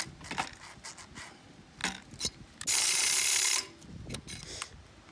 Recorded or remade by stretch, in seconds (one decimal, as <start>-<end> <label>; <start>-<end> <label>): 0.0-5.1 recorded